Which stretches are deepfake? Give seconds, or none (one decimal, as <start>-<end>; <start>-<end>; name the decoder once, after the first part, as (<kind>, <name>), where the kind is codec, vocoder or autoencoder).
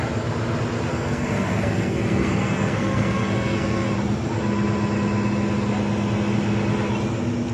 0.9-3.9 (codec, SNAC)